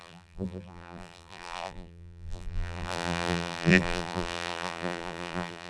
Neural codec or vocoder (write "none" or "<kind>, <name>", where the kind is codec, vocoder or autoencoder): vocoder, BigVGAN v2